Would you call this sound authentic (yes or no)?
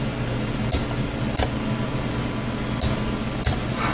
yes